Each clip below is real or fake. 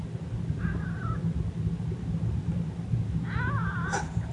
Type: real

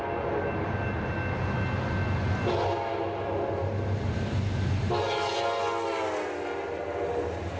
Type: real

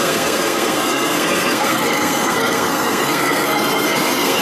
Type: fake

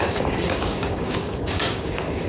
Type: fake